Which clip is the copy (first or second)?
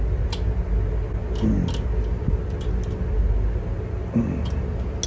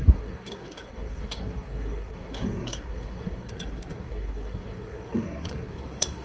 second